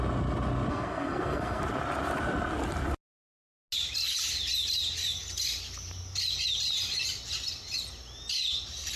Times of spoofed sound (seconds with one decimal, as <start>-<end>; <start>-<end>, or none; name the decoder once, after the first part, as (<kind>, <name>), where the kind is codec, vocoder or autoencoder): 0.7-1.6 (codec, SNAC)